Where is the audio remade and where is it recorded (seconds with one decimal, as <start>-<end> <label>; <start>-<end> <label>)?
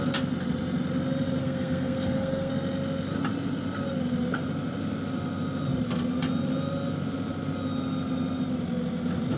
0.0-1.4 recorded; 1.4-2.5 remade; 2.5-9.4 recorded